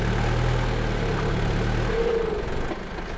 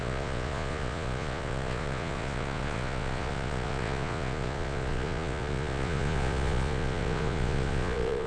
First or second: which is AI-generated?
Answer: second